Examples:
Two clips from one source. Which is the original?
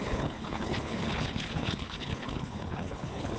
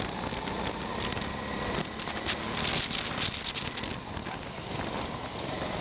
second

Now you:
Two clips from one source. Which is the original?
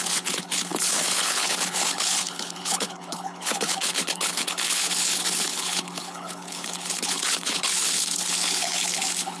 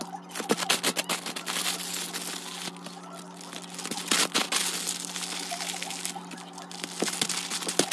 second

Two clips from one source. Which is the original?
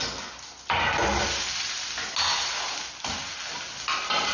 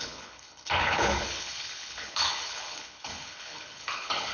first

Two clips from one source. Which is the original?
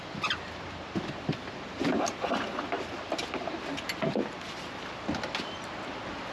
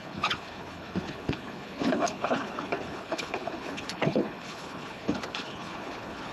first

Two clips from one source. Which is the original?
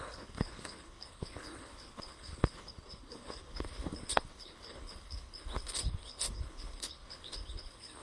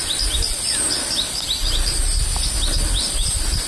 second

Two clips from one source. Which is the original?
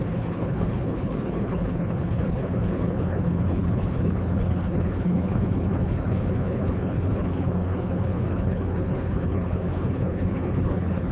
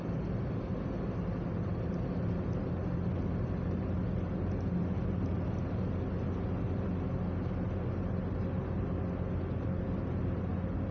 second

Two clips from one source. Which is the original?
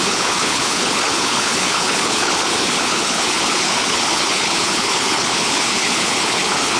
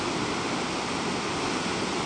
second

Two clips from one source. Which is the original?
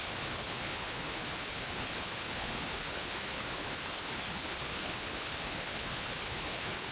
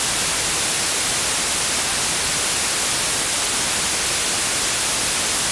second